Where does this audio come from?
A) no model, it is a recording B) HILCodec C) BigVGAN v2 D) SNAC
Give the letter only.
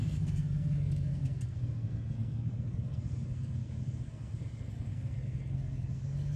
D